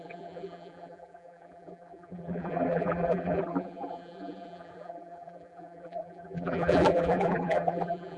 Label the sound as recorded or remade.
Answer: remade